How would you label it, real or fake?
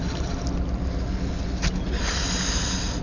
real